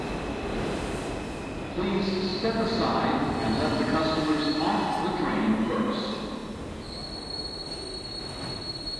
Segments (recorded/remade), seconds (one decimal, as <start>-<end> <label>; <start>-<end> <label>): 0.0-9.0 recorded